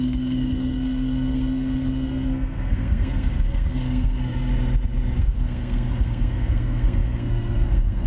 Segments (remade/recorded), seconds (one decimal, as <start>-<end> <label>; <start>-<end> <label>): 0.0-4.5 remade; 4.5-5.2 recorded; 5.2-8.1 remade